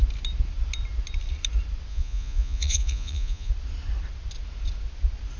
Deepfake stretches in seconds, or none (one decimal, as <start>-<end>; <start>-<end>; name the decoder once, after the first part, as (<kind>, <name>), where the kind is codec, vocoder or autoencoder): 1.9-3.5 (vocoder, Vocos)